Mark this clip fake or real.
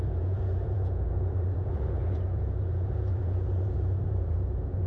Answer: fake